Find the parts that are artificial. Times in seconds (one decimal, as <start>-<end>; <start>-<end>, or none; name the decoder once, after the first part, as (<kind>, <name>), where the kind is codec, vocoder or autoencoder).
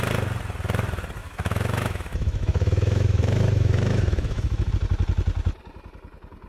1.2-4.7 (autoencoder, DAC-VAE)